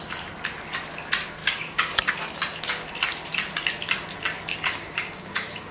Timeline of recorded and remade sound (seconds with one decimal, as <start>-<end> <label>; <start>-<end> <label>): 0.0-1.4 recorded; 1.4-2.1 remade; 2.1-4.5 recorded; 4.5-5.7 remade